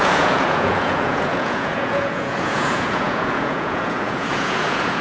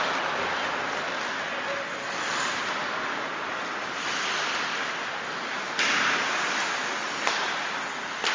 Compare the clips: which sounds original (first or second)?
second